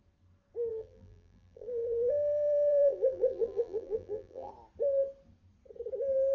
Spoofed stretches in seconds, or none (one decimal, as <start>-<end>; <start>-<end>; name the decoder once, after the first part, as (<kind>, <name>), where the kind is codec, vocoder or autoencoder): 0.7-4.5 (vocoder, BigVGAN v2)